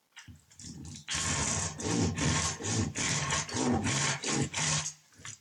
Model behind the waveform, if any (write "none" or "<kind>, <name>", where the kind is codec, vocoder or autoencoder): none